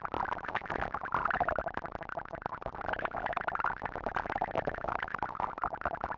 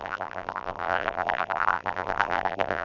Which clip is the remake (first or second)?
second